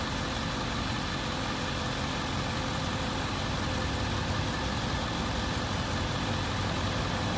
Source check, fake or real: real